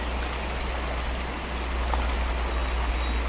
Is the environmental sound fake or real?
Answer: real